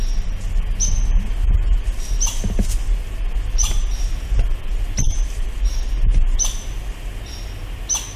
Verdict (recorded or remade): recorded